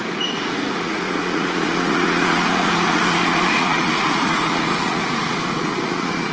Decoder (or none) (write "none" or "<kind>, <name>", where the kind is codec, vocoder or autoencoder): vocoder, Vocos